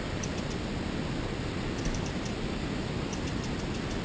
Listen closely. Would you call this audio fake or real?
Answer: real